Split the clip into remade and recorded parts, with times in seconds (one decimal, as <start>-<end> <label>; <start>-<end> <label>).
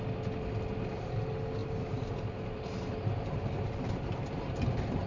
0.0-1.6 recorded; 1.6-5.1 remade